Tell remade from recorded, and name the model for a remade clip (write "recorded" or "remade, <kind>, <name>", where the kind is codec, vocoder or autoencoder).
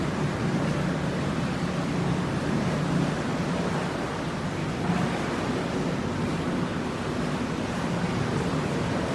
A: recorded